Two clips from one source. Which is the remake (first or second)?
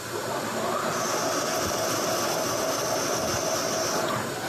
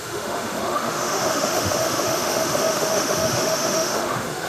second